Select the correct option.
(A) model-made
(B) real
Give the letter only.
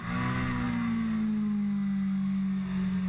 B